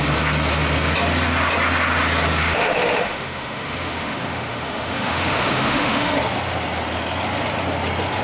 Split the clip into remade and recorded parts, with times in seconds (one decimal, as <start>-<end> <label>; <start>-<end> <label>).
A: 0.0-2.4 recorded; 2.4-6.2 remade; 6.2-8.2 recorded